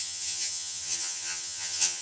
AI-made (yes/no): yes